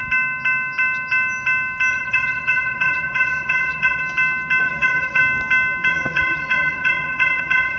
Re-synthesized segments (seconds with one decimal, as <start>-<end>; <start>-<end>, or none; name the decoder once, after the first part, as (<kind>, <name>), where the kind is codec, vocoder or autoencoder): 1.9-4.0 (vocoder, Vocos); 4.6-5.2; 5.9-7.8